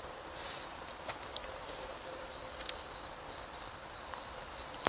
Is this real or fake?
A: fake